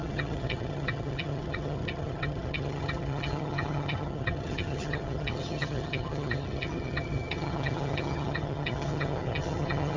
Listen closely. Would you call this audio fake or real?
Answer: fake